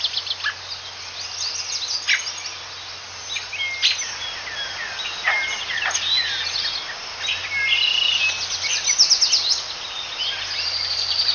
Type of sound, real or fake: real